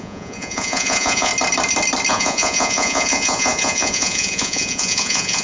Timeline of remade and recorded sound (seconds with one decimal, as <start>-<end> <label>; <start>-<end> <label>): 0.0-1.3 remade; 1.3-2.1 recorded; 2.1-5.4 remade